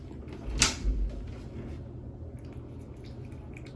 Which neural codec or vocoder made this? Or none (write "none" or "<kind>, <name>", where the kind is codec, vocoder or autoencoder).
none